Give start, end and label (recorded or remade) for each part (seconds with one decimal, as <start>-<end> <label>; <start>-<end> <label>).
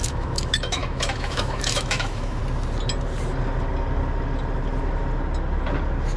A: 0.0-2.4 remade; 2.4-6.2 recorded